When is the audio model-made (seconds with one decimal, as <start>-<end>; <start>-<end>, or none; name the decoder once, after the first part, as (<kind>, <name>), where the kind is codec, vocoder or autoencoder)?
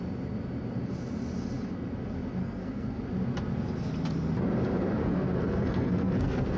2.4-3.0 (codec, SNAC); 5.0-6.6